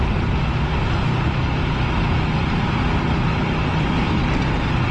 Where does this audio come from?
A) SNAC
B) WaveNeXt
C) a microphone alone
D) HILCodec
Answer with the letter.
C